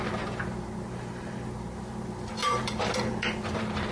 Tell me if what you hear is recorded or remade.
remade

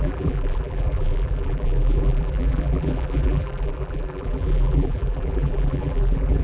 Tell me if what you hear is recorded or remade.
remade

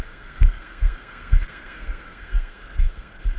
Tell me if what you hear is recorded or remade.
remade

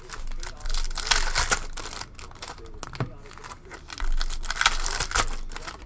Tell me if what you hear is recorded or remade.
recorded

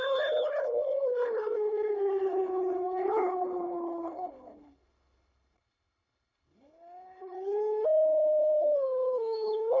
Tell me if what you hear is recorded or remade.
remade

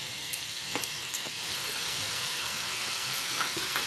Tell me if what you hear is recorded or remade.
remade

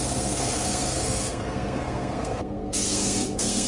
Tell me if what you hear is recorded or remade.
remade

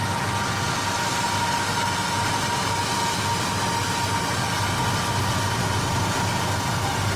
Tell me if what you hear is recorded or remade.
recorded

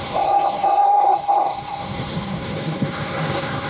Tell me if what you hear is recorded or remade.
remade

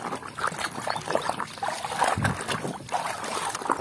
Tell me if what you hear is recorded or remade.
recorded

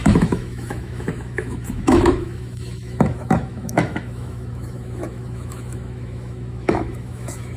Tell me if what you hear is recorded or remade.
remade